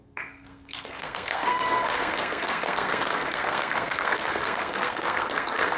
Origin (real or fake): fake